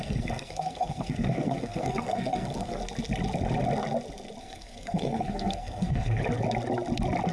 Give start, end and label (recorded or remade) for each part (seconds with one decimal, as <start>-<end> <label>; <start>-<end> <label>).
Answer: 0.0-2.8 remade; 2.8-4.4 recorded; 4.4-6.2 remade; 6.2-7.3 recorded